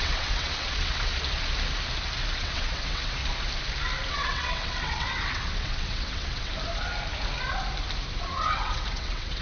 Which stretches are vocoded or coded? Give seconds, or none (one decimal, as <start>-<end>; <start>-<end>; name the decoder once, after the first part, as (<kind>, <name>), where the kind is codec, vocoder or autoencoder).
0.0-1.1 (vocoder, WaveNeXt); 2.4-3.2; 4.1-6.5; 8.2-9.4